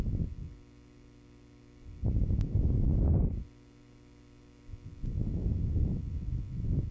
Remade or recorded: recorded